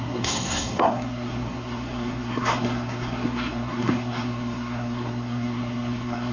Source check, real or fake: fake